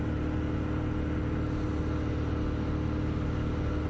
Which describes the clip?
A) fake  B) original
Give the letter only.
B